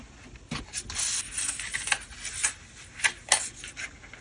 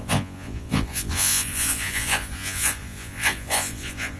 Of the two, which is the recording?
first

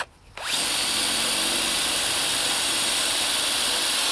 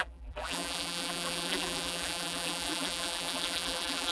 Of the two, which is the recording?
first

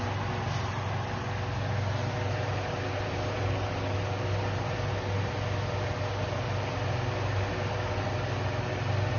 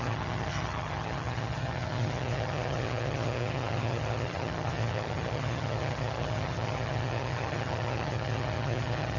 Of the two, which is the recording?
first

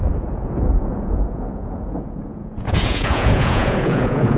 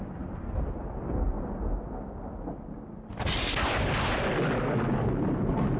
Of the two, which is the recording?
second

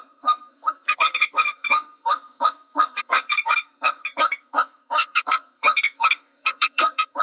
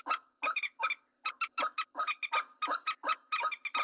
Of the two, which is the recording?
second